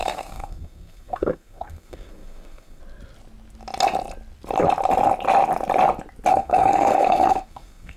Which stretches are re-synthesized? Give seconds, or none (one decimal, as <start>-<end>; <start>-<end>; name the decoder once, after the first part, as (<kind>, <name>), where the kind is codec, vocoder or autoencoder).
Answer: 0.0-2.8 (codec, SNAC); 6.3-8.0